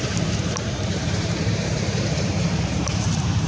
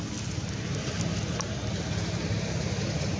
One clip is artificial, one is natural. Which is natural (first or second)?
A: second